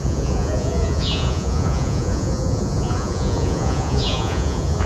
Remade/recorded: remade